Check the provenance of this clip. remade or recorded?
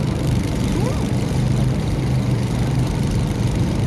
remade